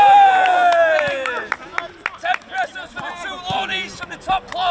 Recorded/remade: recorded